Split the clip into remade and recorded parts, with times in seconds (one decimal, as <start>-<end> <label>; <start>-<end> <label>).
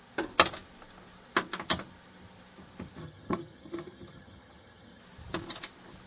0.0-3.0 recorded; 3.0-5.0 remade; 5.0-6.1 recorded